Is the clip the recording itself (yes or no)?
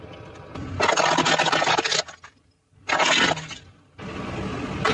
yes